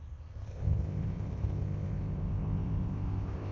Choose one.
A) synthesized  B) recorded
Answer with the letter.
A